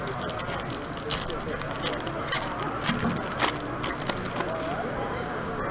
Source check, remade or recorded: recorded